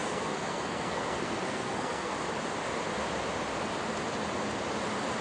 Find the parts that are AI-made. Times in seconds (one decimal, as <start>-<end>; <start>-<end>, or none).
0.0-2.1